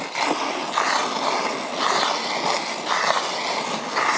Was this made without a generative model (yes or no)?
yes